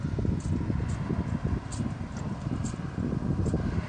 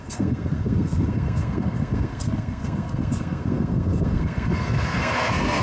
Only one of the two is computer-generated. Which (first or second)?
second